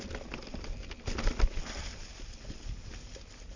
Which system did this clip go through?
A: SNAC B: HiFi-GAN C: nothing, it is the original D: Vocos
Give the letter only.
C